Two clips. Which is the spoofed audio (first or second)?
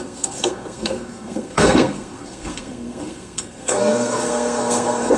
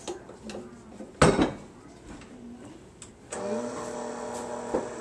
first